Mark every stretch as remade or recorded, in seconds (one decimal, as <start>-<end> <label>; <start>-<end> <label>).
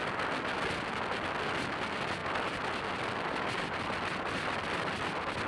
0.0-5.5 recorded